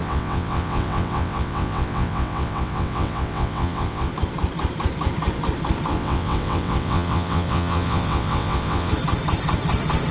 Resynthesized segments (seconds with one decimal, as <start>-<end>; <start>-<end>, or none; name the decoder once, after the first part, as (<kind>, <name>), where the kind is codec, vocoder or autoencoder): 0.0-4.1 (vocoder, WaveNeXt); 5.9-8.9